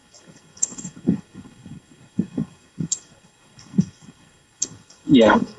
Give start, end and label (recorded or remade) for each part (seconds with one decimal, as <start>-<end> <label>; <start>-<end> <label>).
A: 0.0-5.6 remade